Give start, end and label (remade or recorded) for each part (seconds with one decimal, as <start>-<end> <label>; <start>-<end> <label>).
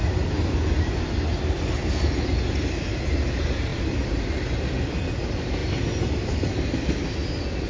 0.0-3.7 recorded; 3.7-4.7 remade; 4.7-7.7 recorded